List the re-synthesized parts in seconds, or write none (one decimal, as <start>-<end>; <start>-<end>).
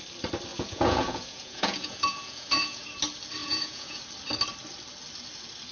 0.5-2.8; 3.4-4.0